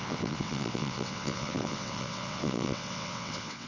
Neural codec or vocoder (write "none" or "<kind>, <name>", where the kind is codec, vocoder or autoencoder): vocoder, WaveNeXt